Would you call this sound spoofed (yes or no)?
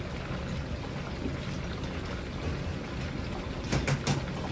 no